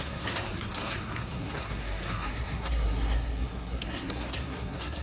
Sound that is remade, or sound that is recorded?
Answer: remade